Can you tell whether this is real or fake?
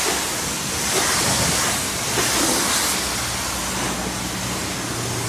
real